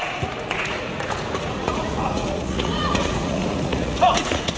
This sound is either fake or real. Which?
fake